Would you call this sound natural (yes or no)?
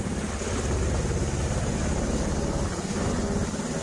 yes